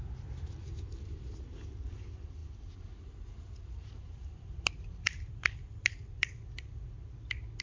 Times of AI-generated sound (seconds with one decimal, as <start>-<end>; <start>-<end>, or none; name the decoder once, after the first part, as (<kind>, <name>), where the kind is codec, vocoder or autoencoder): none